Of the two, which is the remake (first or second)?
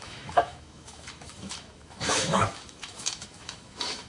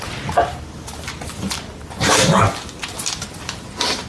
first